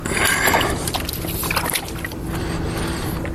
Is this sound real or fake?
real